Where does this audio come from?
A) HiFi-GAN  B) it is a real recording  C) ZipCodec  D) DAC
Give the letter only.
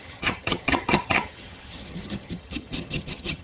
A